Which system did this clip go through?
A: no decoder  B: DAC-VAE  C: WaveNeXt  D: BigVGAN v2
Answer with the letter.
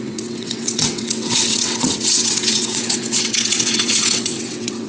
C